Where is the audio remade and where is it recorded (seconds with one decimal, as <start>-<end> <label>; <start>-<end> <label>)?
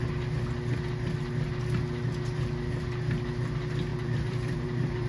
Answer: 0.0-3.9 recorded; 3.9-5.1 remade